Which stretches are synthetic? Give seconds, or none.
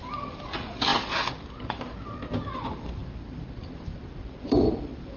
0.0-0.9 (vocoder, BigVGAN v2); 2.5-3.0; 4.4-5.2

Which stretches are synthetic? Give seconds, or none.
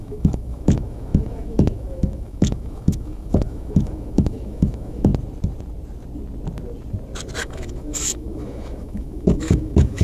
0.0-5.1 (autoencoder, DAC-VAE); 7.4-10.0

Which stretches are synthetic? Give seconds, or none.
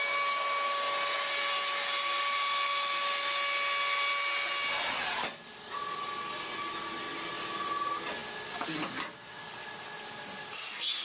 none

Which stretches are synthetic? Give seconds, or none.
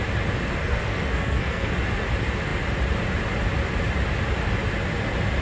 0.6-1.7 (codec, SNAC)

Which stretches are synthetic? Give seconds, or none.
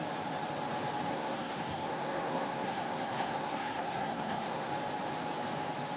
1.1-4.7 (codec, SNAC)